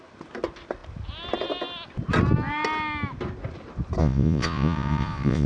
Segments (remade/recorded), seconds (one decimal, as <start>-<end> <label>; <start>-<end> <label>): 0.0-4.0 recorded; 4.0-5.5 remade